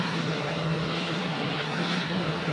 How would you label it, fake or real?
fake